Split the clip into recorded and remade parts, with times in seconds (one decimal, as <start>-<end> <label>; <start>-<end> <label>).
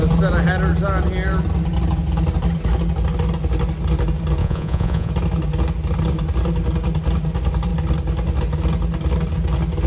0.0-4.4 recorded; 4.4-5.1 remade; 5.1-9.9 recorded